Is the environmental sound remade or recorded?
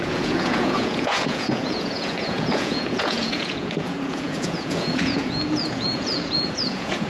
remade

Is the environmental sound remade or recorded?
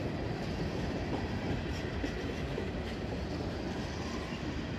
recorded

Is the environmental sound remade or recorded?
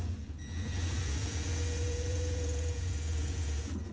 remade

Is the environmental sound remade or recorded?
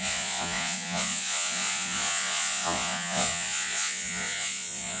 remade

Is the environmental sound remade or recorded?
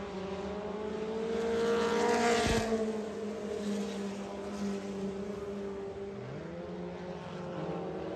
recorded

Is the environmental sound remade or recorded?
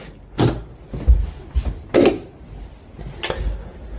recorded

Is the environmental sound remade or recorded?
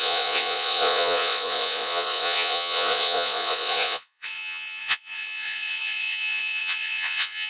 remade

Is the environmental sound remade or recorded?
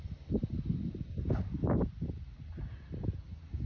recorded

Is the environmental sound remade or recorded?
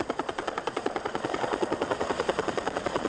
remade